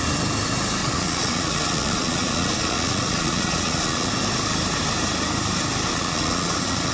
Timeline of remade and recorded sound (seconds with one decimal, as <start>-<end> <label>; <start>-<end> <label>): 0.0-0.8 recorded; 0.8-4.1 remade; 4.1-5.9 recorded; 5.9-6.9 remade